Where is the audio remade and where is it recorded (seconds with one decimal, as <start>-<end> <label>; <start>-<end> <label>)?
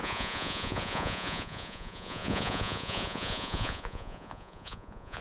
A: 0.0-5.2 remade